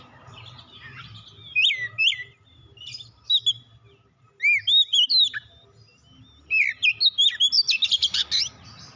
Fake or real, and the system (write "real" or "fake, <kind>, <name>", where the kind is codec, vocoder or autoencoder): real